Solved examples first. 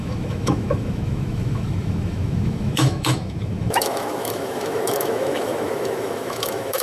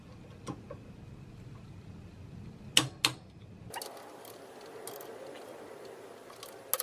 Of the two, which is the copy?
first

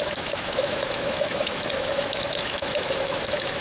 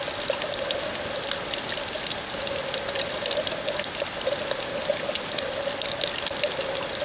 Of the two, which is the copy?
first